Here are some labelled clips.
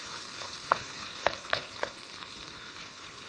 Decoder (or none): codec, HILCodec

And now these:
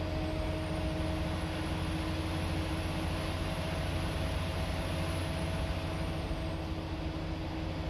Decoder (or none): none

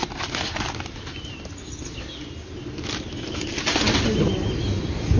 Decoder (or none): none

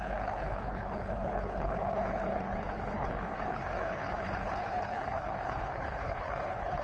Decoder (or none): codec, HILCodec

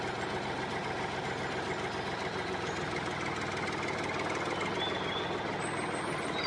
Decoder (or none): none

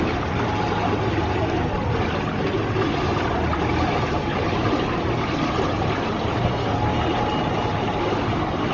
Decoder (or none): none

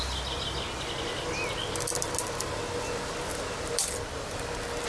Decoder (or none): none